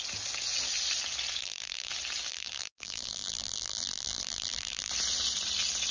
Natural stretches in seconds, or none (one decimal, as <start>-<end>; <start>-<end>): 0.0-1.4; 1.9-2.3; 4.9-5.9